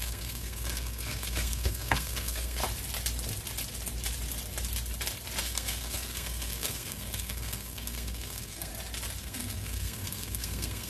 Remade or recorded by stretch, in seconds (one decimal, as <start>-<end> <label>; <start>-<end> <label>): 0.0-2.6 remade; 2.6-5.4 recorded; 5.4-8.7 remade; 8.7-9.2 recorded; 9.2-10.9 remade